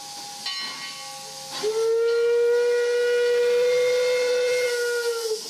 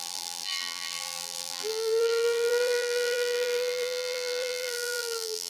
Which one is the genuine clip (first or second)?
first